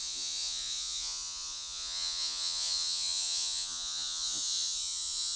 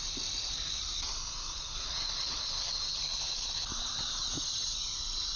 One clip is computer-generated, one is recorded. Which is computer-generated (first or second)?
first